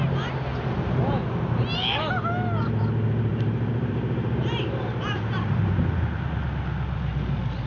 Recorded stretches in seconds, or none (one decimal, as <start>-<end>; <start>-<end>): 0.0-3.3; 5.6-7.7